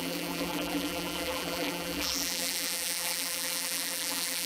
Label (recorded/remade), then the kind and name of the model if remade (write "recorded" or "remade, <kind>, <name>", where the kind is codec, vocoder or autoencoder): remade, vocoder, BigVGAN v2